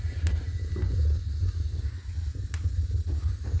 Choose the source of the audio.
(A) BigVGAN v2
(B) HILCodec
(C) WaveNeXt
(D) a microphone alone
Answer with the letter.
D